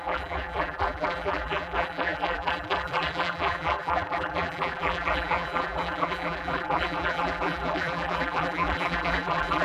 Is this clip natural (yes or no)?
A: no